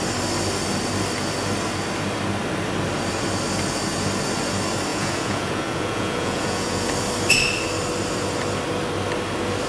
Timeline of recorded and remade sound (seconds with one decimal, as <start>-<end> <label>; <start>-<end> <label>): 0.0-4.9 recorded; 4.9-6.9 remade; 6.9-9.7 recorded